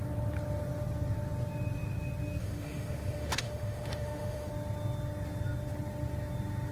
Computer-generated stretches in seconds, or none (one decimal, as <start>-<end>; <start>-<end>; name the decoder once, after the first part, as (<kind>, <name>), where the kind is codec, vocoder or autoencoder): 2.4-4.5 (autoencoder, DAC-VAE)